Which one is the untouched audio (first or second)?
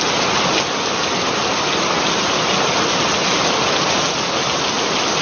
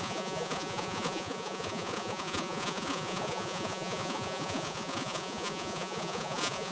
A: first